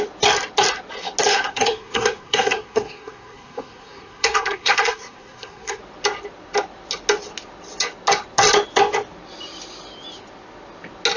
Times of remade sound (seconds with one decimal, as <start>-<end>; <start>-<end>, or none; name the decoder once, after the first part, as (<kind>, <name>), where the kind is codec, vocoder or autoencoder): 1.3-5.8 (codec, SNAC)